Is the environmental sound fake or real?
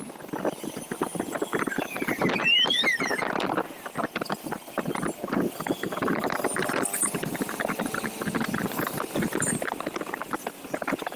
real